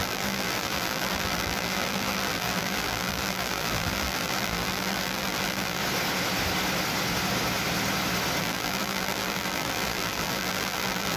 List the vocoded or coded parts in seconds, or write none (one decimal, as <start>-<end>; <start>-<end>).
0.0-5.8; 8.4-11.2